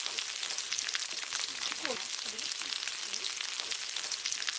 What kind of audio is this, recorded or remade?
recorded